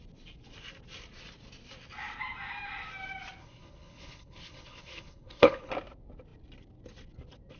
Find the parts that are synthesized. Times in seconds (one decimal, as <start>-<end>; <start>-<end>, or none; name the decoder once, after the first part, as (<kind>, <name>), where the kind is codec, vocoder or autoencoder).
3.4-5.7 (codec, HILCodec)

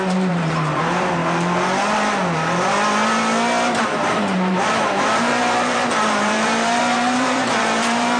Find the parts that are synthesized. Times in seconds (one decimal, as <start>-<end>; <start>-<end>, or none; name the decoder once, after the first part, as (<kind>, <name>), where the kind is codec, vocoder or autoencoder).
0.0-1.2 (vocoder, BigVGAN v2); 3.8-8.2

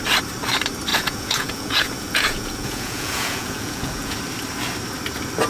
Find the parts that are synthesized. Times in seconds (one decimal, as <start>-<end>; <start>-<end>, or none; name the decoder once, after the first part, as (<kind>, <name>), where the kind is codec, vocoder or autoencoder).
0.9-4.2 (vocoder, Vocos)

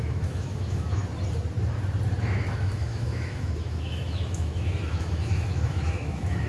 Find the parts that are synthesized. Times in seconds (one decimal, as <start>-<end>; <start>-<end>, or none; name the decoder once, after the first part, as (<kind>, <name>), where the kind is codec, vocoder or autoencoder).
0.0-1.0 (autoencoder, DAC-VAE); 2.2-6.5